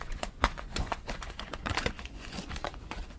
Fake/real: fake